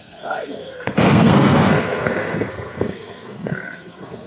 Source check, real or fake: fake